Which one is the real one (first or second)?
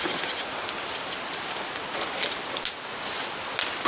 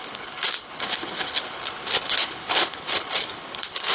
first